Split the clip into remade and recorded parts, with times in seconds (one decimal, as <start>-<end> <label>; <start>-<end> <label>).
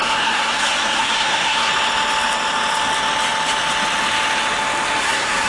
0.0-1.7 remade; 1.7-5.0 recorded; 5.0-5.5 remade